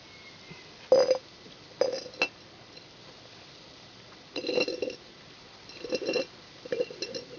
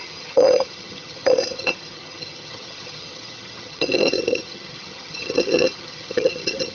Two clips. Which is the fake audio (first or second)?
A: second